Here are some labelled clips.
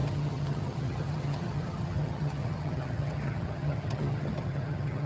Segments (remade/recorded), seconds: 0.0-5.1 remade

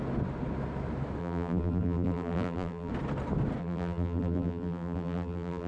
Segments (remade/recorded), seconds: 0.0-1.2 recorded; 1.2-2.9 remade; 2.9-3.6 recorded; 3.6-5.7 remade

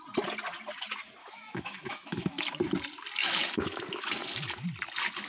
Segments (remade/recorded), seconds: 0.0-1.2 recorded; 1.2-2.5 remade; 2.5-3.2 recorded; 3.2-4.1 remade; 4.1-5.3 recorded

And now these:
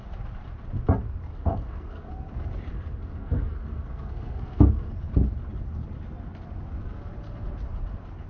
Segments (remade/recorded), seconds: 0.0-1.3 recorded; 1.3-2.1 remade; 2.1-2.7 recorded; 2.7-4.9 remade; 4.9-8.3 recorded

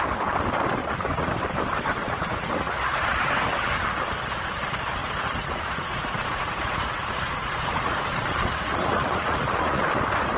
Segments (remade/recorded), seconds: 0.0-0.8 recorded; 0.8-1.3 remade; 1.3-2.0 recorded; 2.0-3.3 remade; 3.3-5.0 recorded; 5.0-9.9 remade; 9.9-10.4 recorded

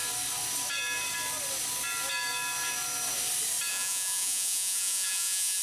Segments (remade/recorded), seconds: 0.0-3.7 recorded; 3.7-5.6 remade